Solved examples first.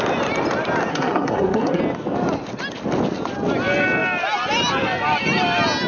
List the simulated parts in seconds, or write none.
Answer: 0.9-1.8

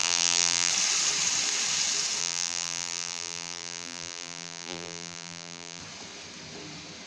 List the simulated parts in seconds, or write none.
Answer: 0.0-0.7; 2.2-5.8